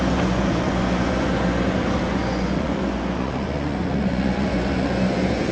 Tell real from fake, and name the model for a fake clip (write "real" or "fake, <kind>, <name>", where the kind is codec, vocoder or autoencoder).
fake, vocoder, Vocos